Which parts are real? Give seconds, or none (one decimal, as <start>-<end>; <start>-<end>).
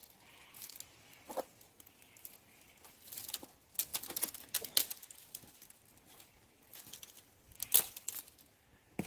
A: 0.7-9.1